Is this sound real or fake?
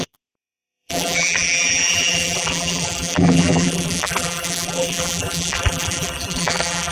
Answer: fake